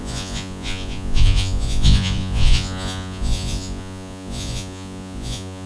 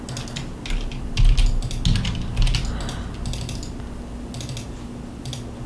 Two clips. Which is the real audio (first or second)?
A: second